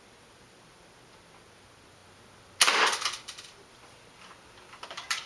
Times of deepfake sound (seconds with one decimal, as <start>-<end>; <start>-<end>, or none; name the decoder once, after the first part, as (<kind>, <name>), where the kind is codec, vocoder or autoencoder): none